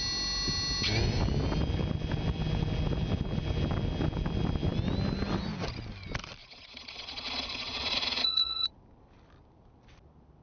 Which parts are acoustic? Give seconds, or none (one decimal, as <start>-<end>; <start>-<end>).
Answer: 0.0-6.4; 8.7-10.4